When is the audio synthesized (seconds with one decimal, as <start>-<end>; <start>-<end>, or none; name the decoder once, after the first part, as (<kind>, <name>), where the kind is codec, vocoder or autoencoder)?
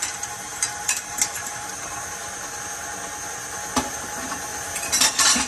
4.5-5.5 (vocoder, BigVGAN v2)